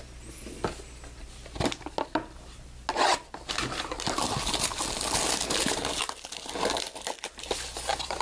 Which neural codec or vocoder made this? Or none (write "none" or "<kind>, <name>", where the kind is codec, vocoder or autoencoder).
none